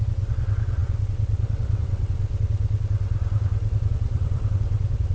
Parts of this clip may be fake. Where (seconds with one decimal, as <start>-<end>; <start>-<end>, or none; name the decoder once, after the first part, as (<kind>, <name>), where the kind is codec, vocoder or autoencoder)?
0.0-5.1 (vocoder, WaveNeXt)